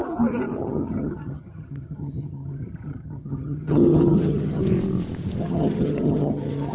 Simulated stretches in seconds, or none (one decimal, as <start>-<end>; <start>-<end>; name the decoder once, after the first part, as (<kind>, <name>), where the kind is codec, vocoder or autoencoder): 0.6-4.6 (vocoder, HiFi-GAN); 5.4-6.7